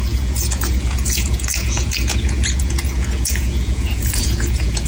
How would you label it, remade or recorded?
remade